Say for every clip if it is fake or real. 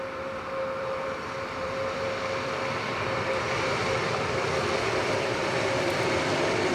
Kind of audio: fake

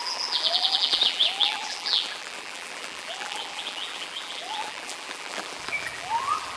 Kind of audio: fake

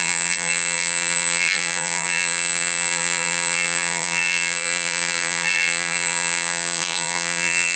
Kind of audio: fake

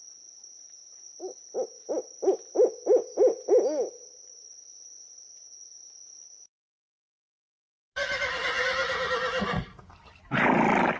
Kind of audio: real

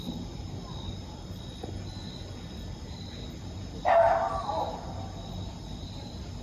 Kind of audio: real